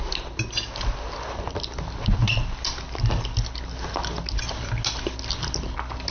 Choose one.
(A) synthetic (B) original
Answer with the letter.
B